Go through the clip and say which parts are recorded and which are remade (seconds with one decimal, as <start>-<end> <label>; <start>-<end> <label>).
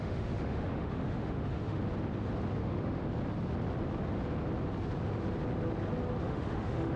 0.0-1.8 remade; 1.8-2.6 recorded; 2.6-3.0 remade; 3.0-6.2 recorded; 6.2-7.0 remade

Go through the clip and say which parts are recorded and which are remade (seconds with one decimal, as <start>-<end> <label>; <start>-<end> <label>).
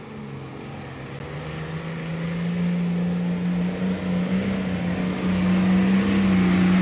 0.0-6.8 recorded